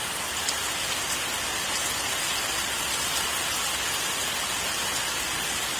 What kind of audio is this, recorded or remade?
recorded